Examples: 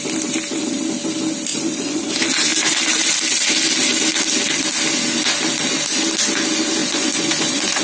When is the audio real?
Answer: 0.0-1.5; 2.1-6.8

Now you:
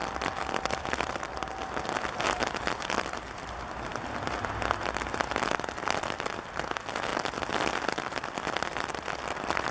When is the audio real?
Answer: 0.0-9.7